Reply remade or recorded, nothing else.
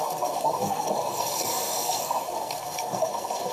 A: remade